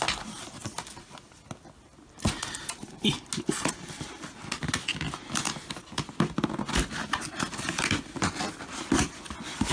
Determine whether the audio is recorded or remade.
recorded